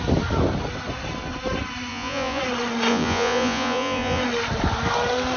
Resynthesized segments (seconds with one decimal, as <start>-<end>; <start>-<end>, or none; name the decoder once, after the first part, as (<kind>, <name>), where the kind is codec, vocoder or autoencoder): 1.9-2.4 (vocoder, Vocos); 2.9-4.2